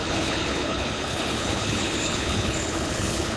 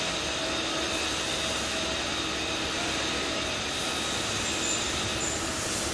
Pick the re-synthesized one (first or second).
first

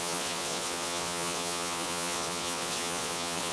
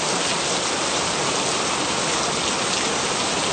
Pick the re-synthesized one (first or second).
first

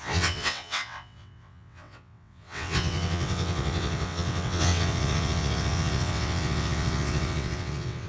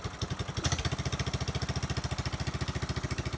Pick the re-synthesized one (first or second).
first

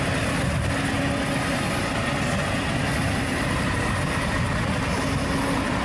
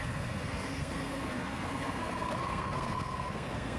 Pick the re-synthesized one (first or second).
second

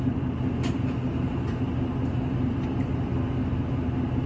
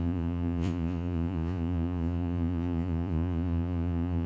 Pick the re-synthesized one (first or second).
second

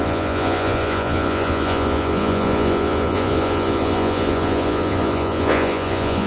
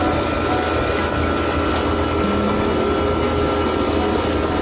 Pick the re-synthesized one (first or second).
first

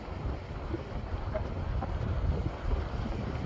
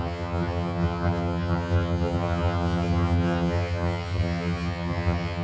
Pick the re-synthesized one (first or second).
second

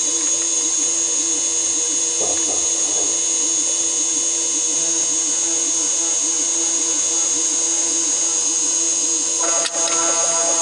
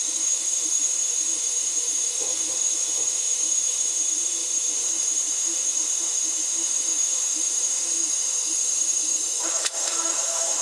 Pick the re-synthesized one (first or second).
second